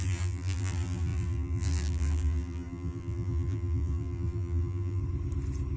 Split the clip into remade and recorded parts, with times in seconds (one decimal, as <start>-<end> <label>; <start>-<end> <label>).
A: 0.0-5.0 remade; 5.0-5.8 recorded